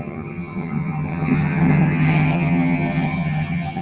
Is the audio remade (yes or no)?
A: yes